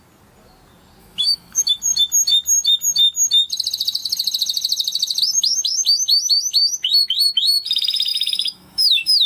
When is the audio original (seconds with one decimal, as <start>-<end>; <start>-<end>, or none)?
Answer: 0.0-1.0; 1.8-8.1